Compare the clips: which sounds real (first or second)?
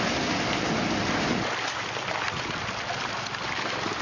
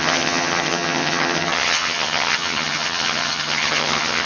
first